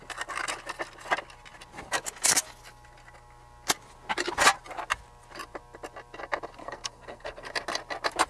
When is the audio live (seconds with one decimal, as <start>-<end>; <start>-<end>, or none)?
0.0-6.6; 7.5-8.3